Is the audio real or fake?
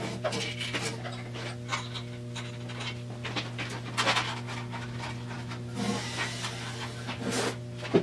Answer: real